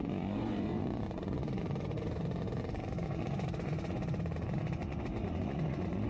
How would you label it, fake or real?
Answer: fake